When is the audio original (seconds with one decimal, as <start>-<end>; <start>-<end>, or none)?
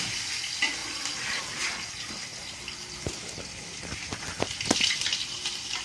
0.0-5.8